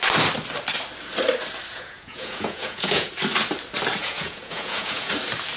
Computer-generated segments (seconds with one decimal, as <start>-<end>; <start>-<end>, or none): 1.7-3.1; 4.0-5.1